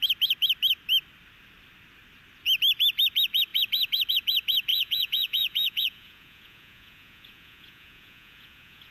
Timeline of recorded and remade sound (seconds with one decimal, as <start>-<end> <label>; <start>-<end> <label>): 0.0-4.7 recorded; 4.7-8.9 remade